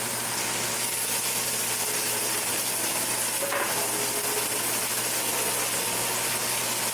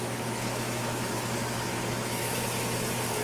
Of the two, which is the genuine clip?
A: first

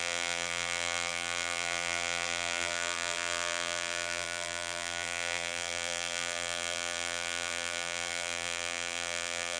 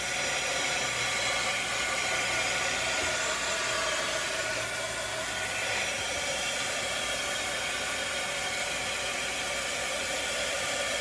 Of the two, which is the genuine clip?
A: second